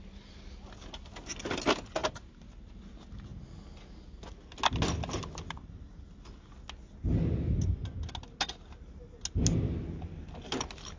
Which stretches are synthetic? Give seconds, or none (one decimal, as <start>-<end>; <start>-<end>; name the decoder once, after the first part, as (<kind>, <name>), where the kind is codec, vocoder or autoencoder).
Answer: none